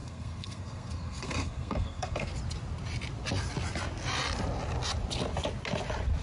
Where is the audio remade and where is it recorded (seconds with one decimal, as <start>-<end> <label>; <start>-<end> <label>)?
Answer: 0.0-2.3 remade; 2.3-6.2 recorded